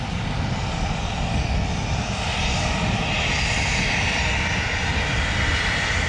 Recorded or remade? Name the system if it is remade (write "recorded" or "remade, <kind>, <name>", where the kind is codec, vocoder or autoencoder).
recorded